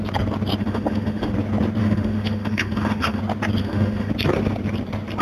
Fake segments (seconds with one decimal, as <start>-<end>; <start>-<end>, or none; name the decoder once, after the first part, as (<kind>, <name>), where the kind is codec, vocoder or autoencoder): 0.6-1.3 (autoencoder, DAC-VAE); 1.8-3.2; 3.6-4.1

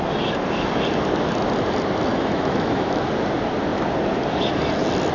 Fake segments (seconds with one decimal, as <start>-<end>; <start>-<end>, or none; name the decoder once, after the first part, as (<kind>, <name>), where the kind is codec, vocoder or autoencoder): 2.1-3.1 (autoencoder, DAC-VAE)

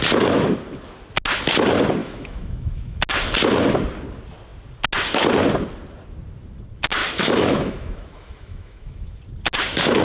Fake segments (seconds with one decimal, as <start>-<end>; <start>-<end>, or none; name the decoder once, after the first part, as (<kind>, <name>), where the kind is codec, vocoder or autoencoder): 2.0-3.0 (autoencoder, DAC-VAE); 7.0-9.2